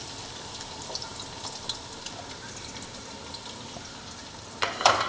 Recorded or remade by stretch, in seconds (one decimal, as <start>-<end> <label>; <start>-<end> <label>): 0.0-1.1 remade; 1.1-4.0 recorded; 4.0-5.1 remade